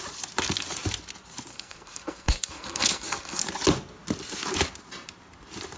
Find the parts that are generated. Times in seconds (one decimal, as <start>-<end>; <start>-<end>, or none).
1.5-3.4